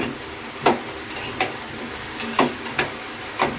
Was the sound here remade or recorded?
recorded